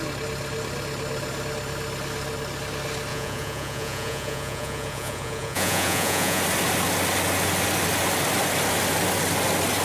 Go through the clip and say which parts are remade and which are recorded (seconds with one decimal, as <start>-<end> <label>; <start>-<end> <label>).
0.0-3.1 recorded; 3.1-6.4 remade; 6.4-9.8 recorded